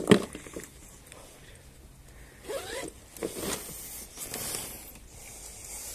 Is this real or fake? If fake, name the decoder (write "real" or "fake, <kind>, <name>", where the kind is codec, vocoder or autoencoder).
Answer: real